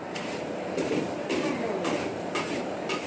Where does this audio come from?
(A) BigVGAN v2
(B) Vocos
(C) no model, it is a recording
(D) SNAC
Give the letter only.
A